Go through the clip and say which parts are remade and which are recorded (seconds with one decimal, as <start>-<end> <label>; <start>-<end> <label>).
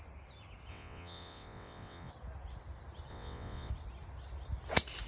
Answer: 0.0-0.7 recorded; 0.7-2.1 remade; 2.1-3.1 recorded; 3.1-3.7 remade; 3.7-5.1 recorded